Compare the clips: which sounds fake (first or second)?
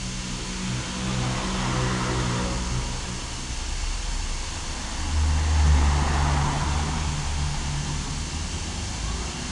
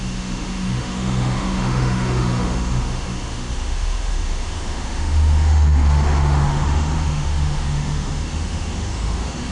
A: second